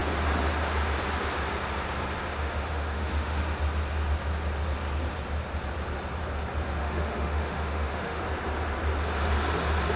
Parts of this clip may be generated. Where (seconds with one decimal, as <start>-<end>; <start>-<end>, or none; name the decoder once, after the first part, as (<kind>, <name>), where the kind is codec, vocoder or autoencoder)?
2.4-3.4 (autoencoder, DAC-VAE); 6.8-8.2